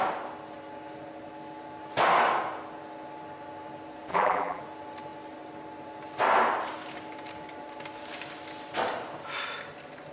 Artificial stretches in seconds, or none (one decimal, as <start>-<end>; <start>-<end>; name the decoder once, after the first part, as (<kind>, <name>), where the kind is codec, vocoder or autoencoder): 4.1-4.6 (vocoder, BigVGAN v2)